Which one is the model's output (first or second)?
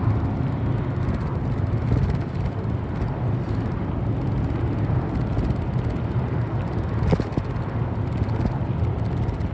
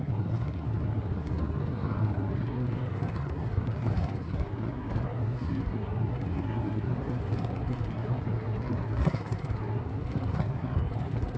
second